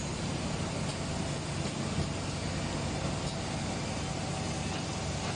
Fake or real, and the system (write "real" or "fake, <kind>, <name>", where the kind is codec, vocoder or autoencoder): real